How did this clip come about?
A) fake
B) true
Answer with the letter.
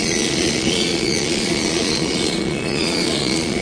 A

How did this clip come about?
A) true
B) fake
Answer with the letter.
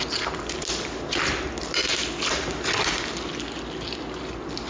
A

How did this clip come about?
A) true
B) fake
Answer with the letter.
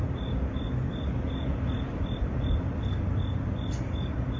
A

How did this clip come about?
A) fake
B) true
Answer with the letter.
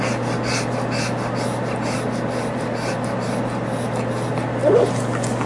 B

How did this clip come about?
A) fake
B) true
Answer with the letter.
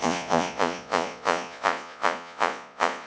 A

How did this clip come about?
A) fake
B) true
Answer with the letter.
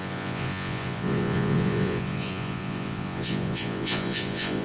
A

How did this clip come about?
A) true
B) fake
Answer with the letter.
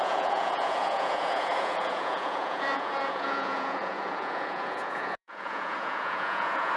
B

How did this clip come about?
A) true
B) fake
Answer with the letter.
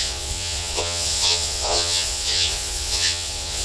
B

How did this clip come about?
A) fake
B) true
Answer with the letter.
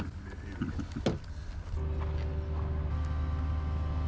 B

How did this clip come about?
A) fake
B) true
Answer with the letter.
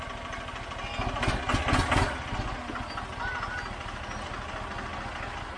B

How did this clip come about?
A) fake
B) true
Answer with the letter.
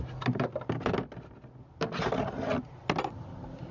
B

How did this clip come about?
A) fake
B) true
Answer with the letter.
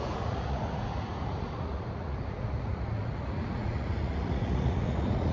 A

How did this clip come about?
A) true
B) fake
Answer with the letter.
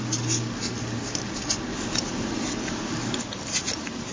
A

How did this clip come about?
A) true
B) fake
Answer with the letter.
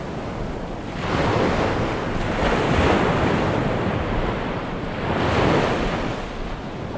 A